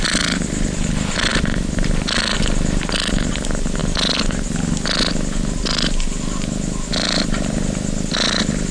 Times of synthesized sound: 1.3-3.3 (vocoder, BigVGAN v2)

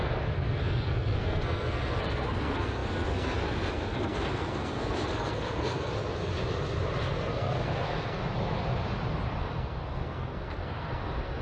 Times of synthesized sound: 0.0-6.3 (codec, SNAC); 7.0-8.2; 9.4-11.4